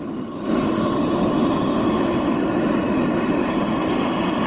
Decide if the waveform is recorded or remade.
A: recorded